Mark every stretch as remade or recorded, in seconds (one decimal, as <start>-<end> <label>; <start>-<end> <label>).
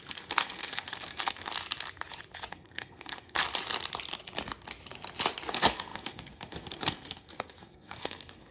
0.0-1.5 remade; 1.5-2.5 recorded; 2.5-3.4 remade; 3.4-5.5 recorded; 5.5-8.5 remade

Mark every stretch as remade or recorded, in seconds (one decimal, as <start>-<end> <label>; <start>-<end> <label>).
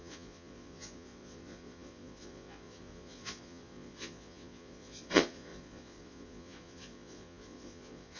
0.0-8.2 remade